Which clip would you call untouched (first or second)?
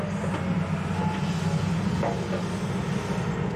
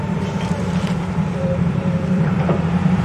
first